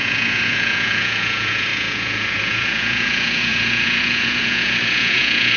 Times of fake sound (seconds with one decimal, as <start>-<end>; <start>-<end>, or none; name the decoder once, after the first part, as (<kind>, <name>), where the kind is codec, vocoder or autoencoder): 0.0-5.6 (vocoder, Vocos)